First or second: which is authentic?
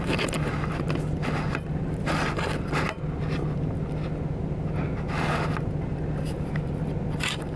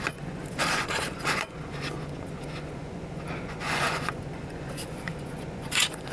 first